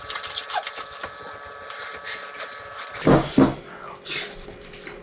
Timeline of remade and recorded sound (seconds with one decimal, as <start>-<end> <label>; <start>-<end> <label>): 0.0-5.0 recorded